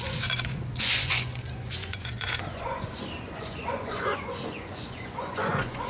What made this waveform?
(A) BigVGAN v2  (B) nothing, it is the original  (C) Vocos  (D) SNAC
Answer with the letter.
C